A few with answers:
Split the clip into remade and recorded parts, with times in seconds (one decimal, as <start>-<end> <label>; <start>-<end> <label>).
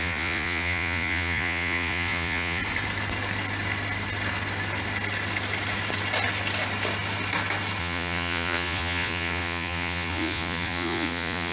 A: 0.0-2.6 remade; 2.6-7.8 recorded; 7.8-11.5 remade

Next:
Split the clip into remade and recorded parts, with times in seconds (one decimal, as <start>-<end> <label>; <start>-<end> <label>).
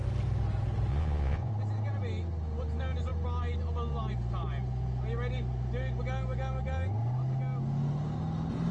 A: 0.0-0.9 recorded; 0.9-1.5 remade; 1.5-8.7 recorded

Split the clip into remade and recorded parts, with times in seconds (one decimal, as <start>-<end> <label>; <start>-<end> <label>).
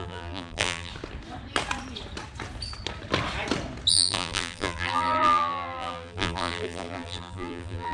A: 0.0-0.9 remade; 0.9-3.9 recorded; 3.9-7.9 remade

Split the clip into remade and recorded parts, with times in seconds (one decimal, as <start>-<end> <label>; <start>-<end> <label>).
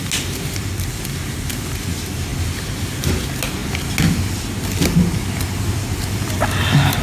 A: 0.0-7.0 recorded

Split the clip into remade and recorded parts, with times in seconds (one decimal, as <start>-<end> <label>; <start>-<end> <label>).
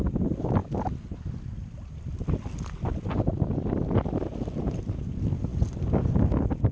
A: 0.0-6.7 recorded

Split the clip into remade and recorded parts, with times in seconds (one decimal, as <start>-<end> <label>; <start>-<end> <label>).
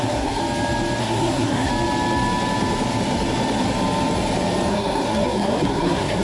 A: 0.0-0.4 remade; 0.4-1.0 recorded; 1.0-1.7 remade; 1.7-4.7 recorded; 4.7-6.2 remade